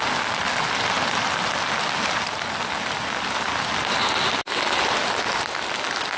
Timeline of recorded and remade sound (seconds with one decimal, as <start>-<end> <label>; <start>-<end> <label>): 0.0-6.2 recorded